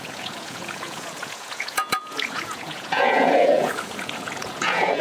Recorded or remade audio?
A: remade